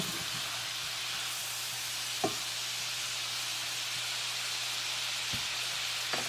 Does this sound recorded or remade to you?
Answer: recorded